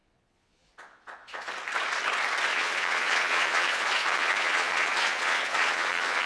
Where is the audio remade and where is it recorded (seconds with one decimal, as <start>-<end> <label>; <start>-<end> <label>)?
0.0-1.5 remade; 1.5-2.5 recorded; 2.5-6.3 remade